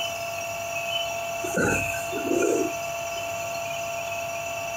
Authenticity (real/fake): real